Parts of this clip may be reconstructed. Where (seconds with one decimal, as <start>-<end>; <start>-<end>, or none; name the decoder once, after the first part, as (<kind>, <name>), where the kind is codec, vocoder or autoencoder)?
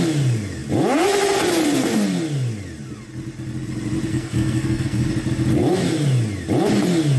4.1-5.1 (codec, SNAC)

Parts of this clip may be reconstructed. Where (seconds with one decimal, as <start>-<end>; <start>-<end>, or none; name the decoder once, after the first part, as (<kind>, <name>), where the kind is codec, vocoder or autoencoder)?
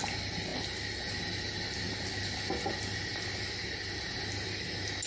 none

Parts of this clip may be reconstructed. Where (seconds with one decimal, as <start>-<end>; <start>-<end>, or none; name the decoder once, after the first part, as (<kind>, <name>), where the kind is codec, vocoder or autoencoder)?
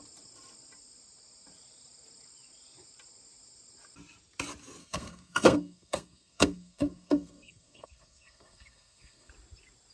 4.8-9.3 (codec, SNAC)